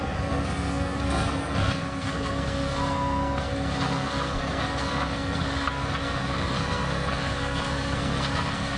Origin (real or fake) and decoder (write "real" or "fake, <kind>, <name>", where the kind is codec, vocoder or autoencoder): fake, codec, SNAC